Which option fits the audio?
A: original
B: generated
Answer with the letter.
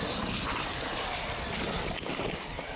A